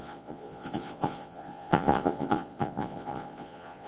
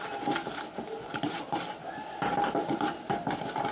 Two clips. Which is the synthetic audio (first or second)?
first